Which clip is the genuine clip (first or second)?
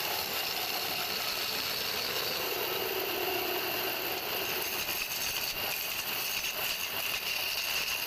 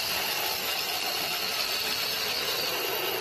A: second